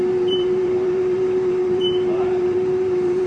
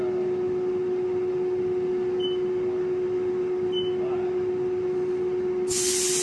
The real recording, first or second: second